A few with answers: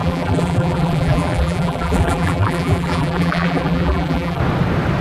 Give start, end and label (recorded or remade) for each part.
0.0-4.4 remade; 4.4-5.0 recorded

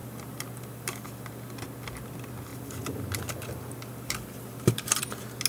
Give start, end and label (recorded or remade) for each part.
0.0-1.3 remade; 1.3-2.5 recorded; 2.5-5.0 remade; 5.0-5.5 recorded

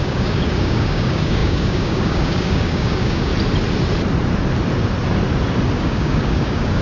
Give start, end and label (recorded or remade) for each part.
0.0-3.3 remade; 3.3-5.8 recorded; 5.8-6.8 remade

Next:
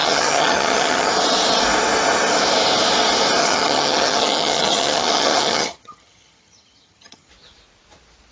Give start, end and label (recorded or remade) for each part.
0.0-1.1 remade; 1.1-3.4 recorded; 3.4-7.3 remade; 7.3-8.3 recorded

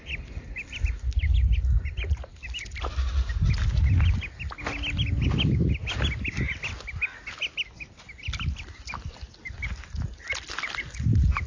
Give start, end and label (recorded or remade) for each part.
0.0-11.5 recorded

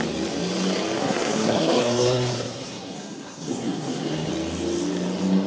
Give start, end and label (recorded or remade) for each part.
0.0-1.0 recorded; 1.0-4.3 remade; 4.3-5.5 recorded

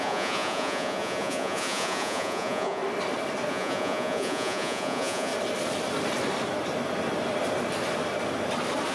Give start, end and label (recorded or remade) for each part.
0.0-2.8 remade; 2.8-3.5 recorded; 3.5-5.3 remade; 5.3-8.9 recorded

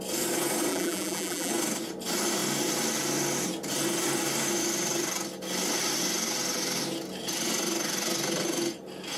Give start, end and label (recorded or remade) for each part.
0.0-0.7 recorded; 0.7-1.5 remade; 1.5-9.2 recorded